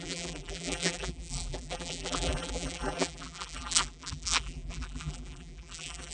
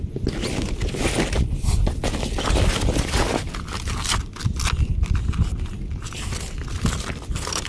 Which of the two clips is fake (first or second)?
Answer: first